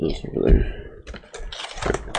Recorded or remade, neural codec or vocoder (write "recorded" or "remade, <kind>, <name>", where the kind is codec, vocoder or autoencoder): recorded